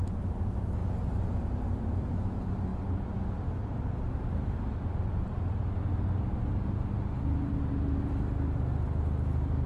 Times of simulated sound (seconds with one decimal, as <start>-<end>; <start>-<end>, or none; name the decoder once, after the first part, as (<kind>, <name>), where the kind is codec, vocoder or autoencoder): none